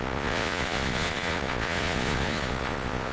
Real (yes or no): no